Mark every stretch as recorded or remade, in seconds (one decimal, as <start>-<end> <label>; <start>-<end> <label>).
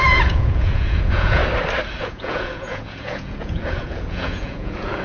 0.0-1.4 remade; 1.4-2.0 recorded; 2.0-5.0 remade